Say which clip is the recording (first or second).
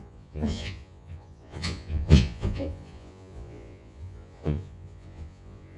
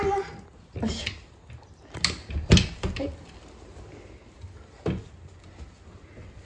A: second